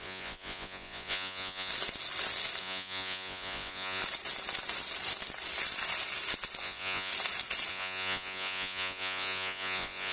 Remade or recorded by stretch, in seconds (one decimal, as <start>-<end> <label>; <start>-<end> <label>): 0.0-1.7 remade; 1.7-2.6 recorded; 2.6-4.0 remade; 4.0-6.6 recorded; 6.6-7.1 remade; 7.1-7.7 recorded; 7.7-10.1 remade